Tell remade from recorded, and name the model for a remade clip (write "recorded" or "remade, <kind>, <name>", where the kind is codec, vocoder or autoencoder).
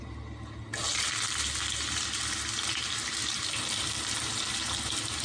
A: recorded